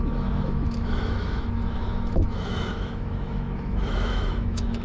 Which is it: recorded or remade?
remade